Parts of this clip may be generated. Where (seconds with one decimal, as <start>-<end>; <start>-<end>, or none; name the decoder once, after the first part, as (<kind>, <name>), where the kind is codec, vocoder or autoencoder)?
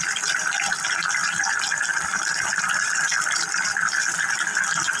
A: none